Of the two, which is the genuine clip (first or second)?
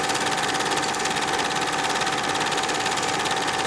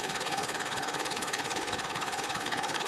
first